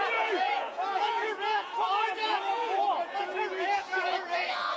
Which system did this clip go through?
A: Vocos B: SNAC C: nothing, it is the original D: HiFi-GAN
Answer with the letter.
A